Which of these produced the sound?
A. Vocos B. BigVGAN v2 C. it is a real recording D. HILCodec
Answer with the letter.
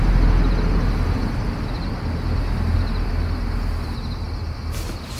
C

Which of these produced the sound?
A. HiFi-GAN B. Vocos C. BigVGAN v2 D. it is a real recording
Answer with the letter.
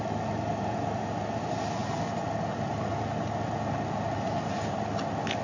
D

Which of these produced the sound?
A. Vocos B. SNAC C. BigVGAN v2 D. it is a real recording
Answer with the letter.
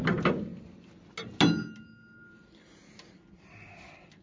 D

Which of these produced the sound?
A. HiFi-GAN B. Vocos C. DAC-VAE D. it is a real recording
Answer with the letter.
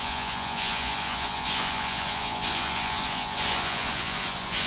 B